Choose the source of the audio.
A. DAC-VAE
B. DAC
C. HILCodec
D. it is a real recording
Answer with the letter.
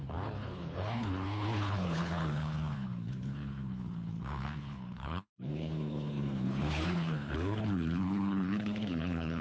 C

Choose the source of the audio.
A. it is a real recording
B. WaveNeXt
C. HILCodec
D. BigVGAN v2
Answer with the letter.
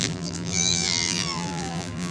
D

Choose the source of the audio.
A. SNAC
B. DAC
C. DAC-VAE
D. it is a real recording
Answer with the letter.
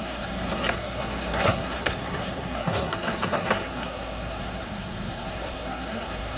A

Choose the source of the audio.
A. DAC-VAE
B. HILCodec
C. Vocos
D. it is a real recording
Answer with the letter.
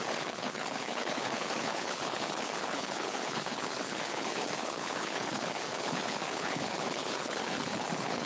B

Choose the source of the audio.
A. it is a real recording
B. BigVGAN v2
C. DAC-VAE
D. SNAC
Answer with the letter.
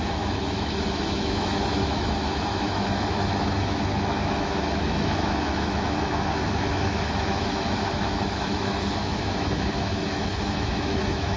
C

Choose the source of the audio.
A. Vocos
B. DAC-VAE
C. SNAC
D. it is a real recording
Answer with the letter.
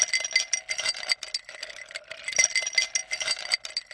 D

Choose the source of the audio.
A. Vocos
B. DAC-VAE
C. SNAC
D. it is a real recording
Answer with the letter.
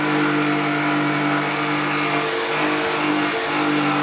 D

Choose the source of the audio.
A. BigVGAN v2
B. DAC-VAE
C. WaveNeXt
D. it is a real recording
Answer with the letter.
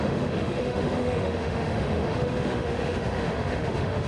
B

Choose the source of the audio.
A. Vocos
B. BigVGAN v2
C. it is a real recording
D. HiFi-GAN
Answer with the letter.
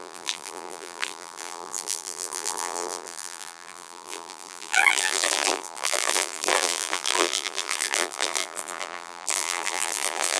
B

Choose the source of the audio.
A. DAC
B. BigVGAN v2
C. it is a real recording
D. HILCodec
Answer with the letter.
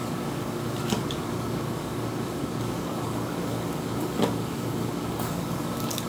A